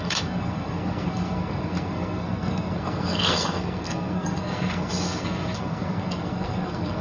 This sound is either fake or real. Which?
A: fake